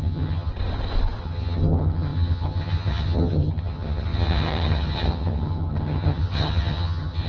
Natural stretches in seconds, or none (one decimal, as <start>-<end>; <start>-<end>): 0.5-1.2